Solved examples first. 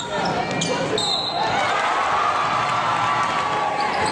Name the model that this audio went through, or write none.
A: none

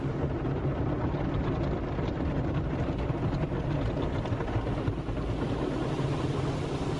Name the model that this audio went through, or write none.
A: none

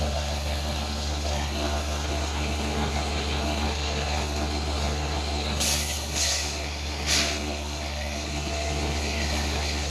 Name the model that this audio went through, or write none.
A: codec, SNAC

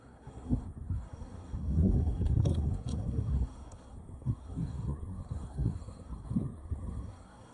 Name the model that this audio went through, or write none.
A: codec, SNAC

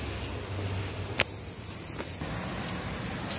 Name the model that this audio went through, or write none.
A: none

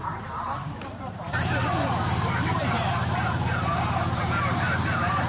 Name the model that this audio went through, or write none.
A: vocoder, BigVGAN v2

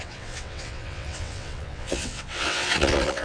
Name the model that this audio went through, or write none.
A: vocoder, WaveNeXt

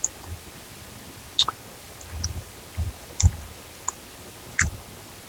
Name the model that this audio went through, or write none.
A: none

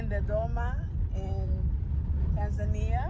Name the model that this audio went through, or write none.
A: none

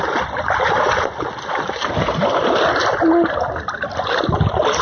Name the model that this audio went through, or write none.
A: none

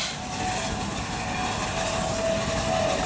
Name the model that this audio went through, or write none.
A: none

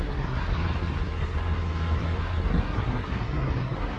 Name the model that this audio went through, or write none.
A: codec, SNAC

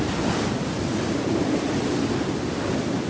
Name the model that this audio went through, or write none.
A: none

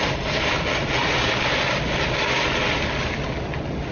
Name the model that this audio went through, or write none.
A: none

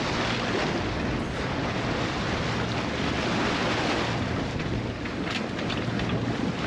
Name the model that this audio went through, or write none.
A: none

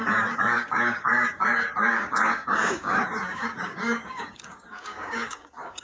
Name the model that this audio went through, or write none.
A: codec, DAC